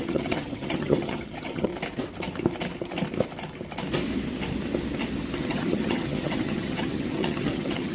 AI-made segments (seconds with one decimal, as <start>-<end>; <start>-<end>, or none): 0.0-1.7; 5.4-7.9